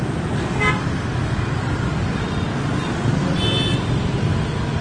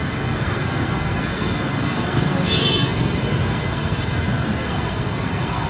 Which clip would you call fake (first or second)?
second